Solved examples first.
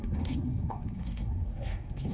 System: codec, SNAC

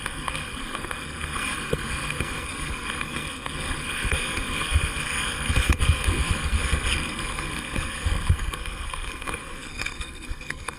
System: codec, SNAC